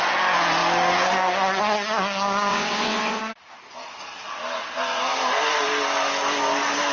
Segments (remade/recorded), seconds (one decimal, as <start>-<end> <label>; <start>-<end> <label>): 0.0-2.5 recorded; 2.5-3.2 remade; 3.2-6.9 recorded